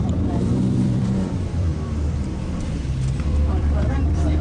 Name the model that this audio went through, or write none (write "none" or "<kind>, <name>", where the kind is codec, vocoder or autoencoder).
vocoder, BigVGAN v2